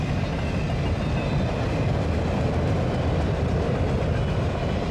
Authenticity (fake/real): real